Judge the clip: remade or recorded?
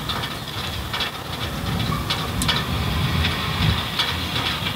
recorded